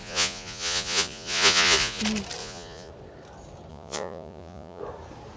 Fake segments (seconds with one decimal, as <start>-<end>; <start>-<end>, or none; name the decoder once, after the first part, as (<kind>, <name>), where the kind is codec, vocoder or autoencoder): 0.0-2.0 (vocoder, Vocos); 2.4-2.9; 3.7-4.8